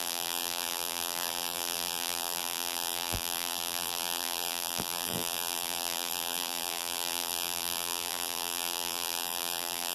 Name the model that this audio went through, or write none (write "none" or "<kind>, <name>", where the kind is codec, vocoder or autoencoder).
vocoder, BigVGAN v2